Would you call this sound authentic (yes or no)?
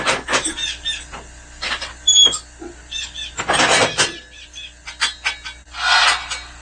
yes